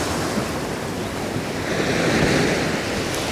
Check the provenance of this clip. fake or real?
real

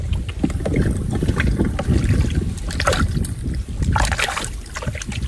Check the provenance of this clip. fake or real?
real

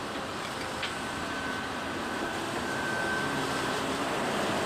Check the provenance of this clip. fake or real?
fake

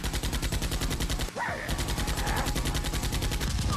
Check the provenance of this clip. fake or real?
fake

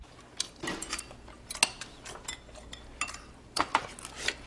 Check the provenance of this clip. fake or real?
real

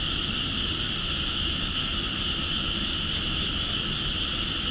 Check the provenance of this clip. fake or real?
real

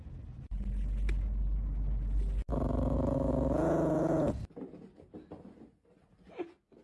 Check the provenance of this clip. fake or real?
real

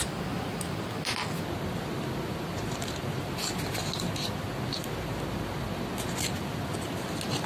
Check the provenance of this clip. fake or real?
real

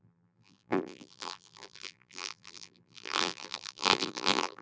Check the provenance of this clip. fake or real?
fake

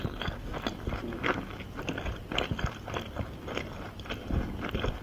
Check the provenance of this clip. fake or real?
real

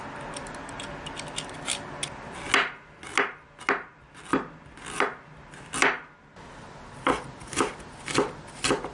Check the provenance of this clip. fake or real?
real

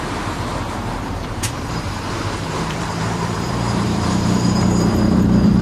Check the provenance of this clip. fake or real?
fake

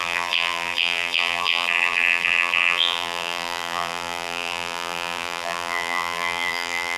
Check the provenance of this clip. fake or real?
fake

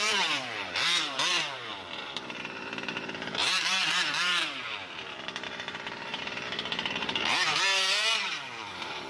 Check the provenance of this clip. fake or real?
fake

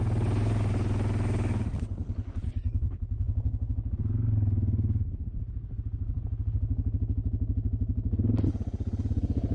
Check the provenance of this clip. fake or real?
real